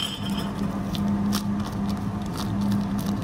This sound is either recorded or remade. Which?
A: recorded